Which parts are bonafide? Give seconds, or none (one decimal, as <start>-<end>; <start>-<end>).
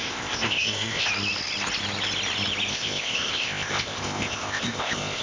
1.1-2.7